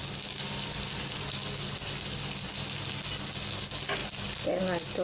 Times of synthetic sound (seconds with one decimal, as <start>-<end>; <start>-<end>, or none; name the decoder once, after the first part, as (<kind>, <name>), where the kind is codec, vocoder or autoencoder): none